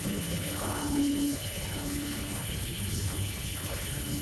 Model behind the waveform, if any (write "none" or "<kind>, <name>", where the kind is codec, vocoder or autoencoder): codec, HILCodec